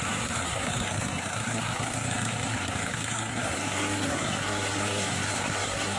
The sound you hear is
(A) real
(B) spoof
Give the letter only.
B